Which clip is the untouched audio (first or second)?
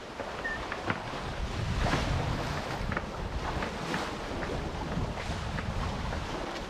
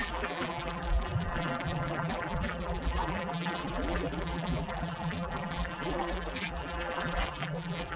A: first